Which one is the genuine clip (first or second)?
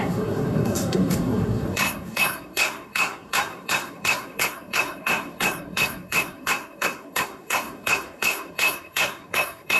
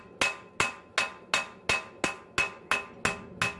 second